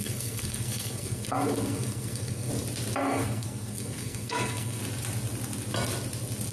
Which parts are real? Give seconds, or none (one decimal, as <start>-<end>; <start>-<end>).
2.5-3.0; 4.8-6.5